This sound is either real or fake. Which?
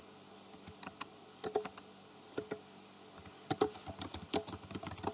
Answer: real